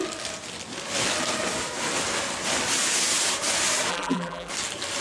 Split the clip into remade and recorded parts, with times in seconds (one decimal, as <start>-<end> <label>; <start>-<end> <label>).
0.0-3.9 recorded; 3.9-4.5 remade; 4.5-5.0 recorded